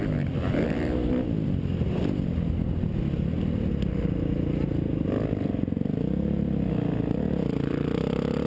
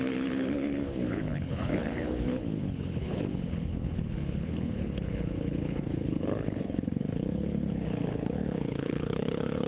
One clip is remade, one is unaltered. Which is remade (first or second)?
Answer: second